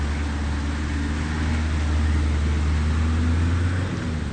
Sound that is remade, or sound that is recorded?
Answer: recorded